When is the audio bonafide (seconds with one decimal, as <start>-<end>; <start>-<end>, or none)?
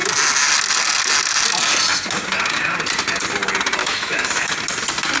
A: 0.0-3.8; 4.5-5.2